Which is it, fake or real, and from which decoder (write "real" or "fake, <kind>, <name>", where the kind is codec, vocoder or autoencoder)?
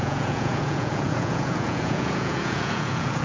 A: fake, vocoder, Vocos